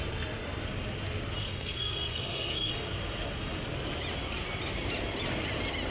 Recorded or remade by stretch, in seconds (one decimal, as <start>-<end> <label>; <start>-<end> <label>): 0.0-1.4 recorded; 1.4-2.7 remade; 2.7-5.9 recorded